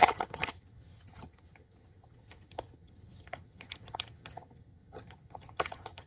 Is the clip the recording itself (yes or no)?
no